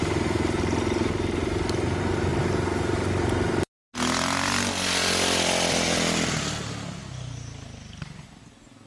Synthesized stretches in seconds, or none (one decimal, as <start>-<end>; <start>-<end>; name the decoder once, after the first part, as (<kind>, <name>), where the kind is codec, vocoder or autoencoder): none